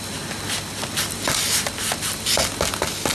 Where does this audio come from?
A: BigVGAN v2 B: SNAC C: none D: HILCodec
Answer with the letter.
C